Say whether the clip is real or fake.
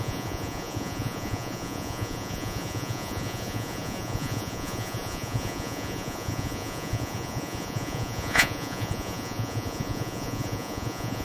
fake